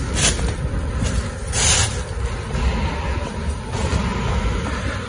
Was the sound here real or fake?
real